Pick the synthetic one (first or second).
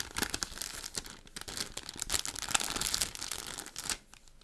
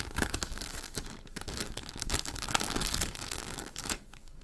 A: second